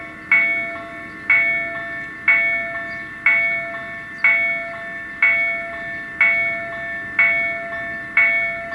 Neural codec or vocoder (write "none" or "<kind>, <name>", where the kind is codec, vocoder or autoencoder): none